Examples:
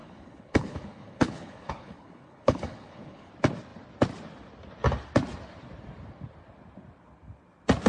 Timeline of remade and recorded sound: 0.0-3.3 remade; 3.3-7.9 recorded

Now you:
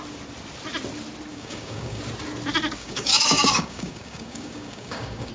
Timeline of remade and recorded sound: 0.0-1.3 recorded; 1.3-2.0 remade; 2.0-2.8 recorded; 2.8-5.3 remade